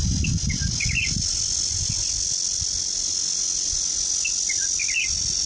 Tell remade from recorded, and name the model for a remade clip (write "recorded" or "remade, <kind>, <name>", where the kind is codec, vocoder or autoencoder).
recorded